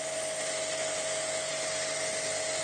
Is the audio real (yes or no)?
yes